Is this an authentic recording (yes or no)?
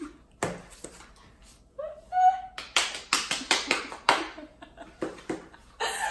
yes